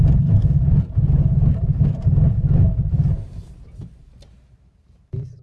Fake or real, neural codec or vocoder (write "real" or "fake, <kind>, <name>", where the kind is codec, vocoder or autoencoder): real